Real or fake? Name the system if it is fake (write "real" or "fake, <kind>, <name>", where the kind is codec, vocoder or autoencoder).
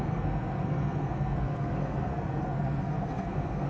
fake, codec, SNAC